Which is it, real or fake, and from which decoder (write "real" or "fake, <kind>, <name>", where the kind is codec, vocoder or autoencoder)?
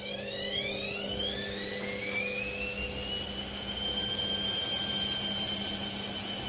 real